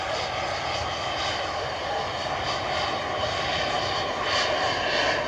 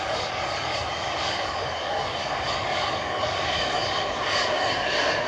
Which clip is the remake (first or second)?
second